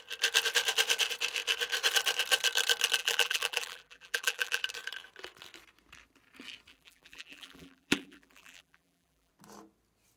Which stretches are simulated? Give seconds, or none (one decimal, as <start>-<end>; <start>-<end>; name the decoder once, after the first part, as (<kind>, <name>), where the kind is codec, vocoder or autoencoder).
3.0-4.6 (vocoder, BigVGAN v2); 6.7-9.3